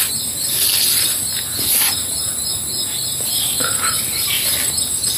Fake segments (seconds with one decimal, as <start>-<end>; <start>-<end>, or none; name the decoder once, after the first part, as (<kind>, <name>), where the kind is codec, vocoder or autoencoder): none